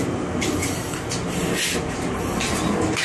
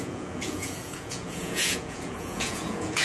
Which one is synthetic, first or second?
second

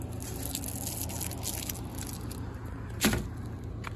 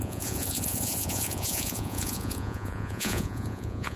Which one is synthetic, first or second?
second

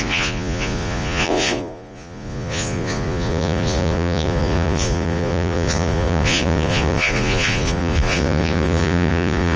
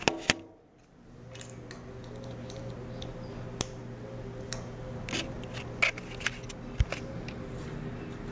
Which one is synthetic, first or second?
first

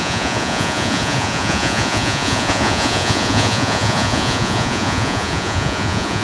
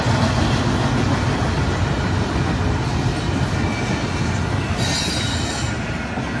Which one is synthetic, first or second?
first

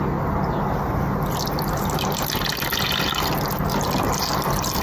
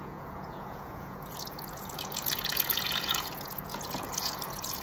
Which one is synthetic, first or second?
second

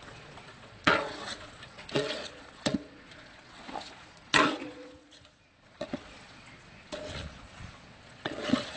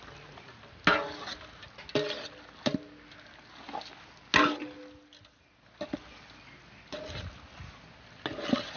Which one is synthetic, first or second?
first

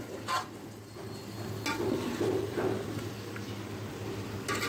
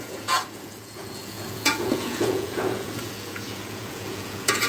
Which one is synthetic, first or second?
second